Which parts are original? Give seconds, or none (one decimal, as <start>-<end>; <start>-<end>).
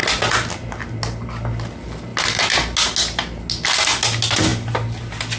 0.0-5.4